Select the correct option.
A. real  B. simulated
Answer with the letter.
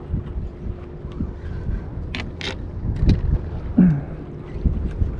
A